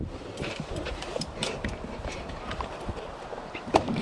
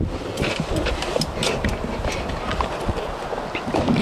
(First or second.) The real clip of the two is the second